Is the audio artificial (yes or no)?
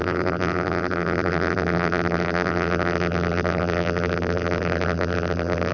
yes